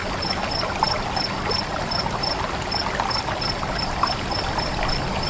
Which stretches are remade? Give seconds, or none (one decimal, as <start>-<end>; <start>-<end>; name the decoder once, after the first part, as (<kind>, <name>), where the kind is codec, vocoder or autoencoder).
none